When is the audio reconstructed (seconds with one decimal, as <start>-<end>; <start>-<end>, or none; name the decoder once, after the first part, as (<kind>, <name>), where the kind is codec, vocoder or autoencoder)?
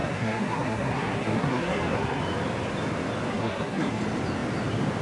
0.0-2.2 (codec, SNAC); 3.3-4.0